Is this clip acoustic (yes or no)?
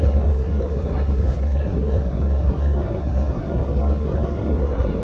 no